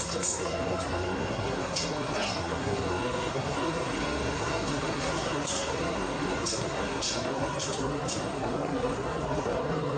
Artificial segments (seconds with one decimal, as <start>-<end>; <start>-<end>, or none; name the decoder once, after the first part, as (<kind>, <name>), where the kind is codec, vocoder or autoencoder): 0.0-10.0 (codec, SNAC)